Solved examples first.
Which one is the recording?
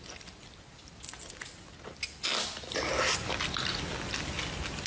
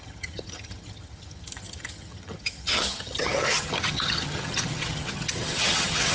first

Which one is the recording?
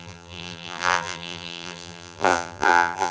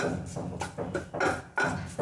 second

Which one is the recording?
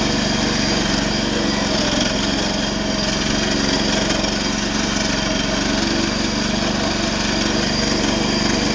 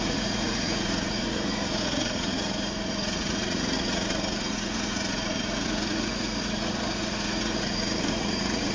first